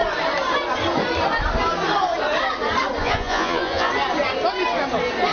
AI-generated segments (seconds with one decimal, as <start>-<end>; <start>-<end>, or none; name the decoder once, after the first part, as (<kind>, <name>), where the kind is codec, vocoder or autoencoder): 3.0-3.9 (vocoder, Vocos)